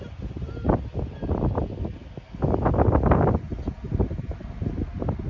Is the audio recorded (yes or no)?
yes